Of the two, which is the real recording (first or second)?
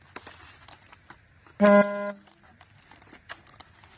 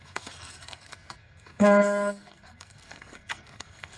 first